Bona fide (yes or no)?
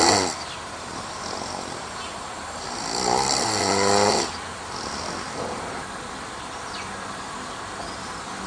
no